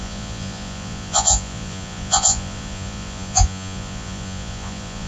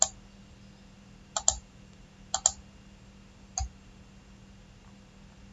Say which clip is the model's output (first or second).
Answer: first